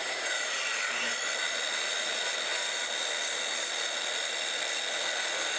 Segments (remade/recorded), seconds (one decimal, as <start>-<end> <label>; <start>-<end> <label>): 0.0-0.7 remade; 0.7-5.6 recorded